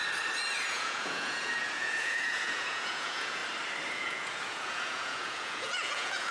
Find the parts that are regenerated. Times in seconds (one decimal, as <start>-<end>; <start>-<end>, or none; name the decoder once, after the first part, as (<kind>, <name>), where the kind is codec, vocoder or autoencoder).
0.7-3.4 (vocoder, Vocos); 3.9-6.3